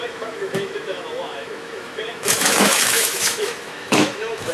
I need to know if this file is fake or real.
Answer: fake